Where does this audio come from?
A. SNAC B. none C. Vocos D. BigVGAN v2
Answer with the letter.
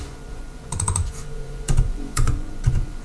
C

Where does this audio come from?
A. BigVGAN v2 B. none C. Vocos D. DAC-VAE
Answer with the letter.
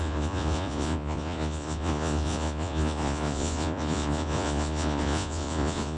C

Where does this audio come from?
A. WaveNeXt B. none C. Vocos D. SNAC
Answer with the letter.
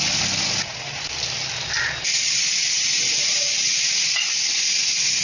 B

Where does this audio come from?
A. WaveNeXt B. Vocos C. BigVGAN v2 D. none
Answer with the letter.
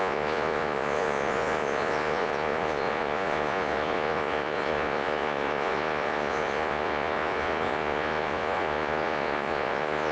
B